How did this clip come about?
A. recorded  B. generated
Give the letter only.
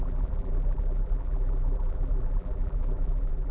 B